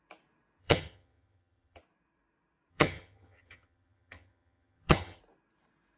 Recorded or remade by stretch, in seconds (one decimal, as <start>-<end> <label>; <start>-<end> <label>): 0.0-0.6 recorded; 0.6-1.8 remade; 1.8-2.7 recorded; 2.7-5.2 remade; 5.2-6.0 recorded